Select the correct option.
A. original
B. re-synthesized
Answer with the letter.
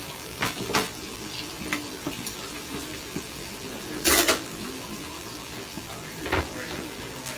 B